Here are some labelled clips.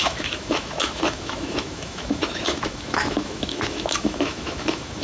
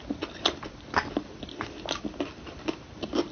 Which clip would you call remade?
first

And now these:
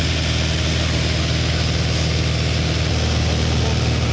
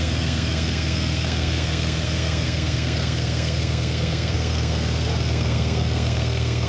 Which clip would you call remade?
second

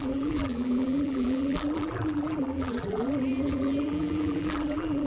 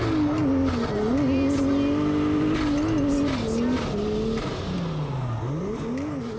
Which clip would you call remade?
first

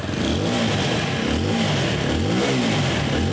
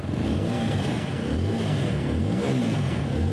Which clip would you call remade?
second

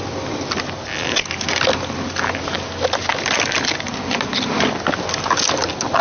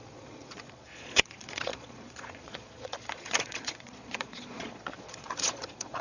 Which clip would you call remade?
second